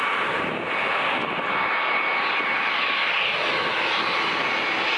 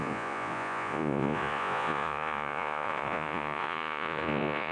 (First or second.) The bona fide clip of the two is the first